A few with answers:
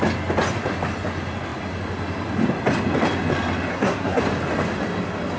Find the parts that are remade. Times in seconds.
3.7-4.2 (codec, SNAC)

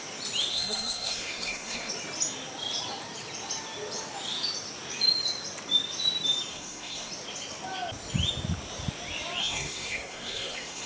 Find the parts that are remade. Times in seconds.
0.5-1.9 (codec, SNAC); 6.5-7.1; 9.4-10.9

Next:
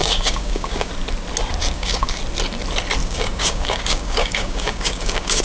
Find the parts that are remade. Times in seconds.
0.0-0.9 (codec, DAC); 1.6-2.2; 3.0-5.4

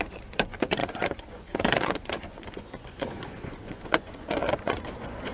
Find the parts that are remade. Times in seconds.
0.0-5.3 (vocoder, Vocos)

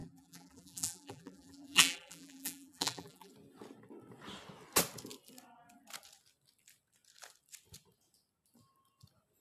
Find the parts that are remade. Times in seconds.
0.0-3.3 (vocoder, BigVGAN v2)

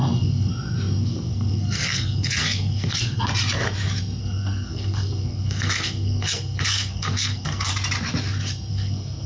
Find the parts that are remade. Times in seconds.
0.0-0.5 (codec, SNAC); 1.0-3.3; 4.2-7.7; 8.7-9.3